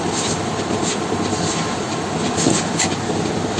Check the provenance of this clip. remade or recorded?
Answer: remade